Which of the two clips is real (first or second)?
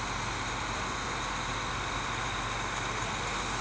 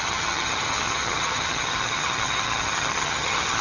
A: first